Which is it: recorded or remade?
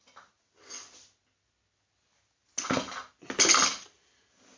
recorded